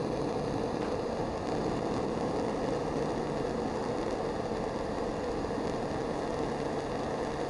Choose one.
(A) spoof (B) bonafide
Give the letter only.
B